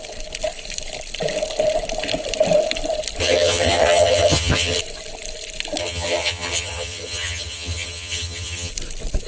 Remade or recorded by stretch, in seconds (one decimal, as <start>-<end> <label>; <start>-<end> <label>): 0.0-3.2 recorded; 3.2-4.8 remade; 4.8-5.8 recorded; 5.8-8.7 remade; 8.7-9.3 recorded